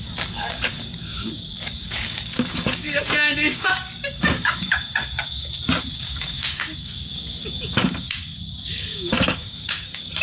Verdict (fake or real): fake